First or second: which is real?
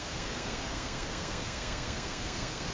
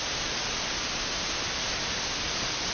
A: second